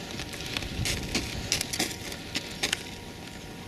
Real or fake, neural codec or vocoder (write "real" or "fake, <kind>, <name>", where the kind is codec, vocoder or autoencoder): real